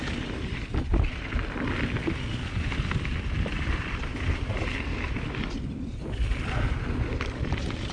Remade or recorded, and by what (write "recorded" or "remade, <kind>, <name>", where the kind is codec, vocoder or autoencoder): recorded